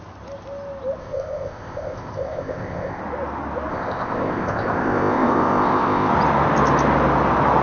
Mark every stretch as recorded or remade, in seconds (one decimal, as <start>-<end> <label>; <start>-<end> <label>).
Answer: 0.0-1.0 recorded; 1.0-3.0 remade; 3.0-3.7 recorded; 3.7-6.1 remade; 6.1-7.6 recorded